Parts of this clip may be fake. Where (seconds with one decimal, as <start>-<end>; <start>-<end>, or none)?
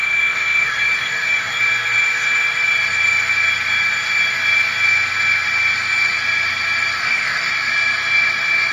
0.0-1.6; 7.0-7.5